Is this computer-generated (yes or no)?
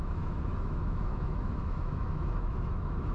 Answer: yes